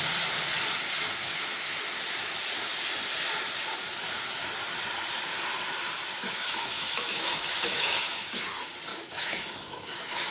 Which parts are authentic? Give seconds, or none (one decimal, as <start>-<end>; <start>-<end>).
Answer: 0.0-1.2; 1.8-6.2; 8.3-8.9